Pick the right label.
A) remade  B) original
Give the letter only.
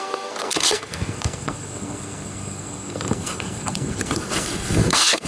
A